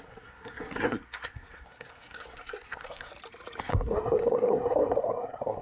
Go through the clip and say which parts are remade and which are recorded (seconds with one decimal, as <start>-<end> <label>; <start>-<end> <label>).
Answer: 0.0-3.1 remade; 3.1-3.6 recorded; 3.6-5.6 remade